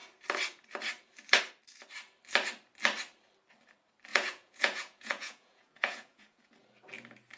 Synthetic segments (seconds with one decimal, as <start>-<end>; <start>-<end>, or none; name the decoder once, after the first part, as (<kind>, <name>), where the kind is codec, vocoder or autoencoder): 4.1-6.5 (vocoder, Vocos)